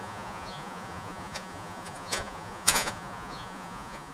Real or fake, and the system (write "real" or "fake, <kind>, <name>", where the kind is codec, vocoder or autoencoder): fake, vocoder, Vocos